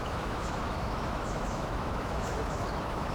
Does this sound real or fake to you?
fake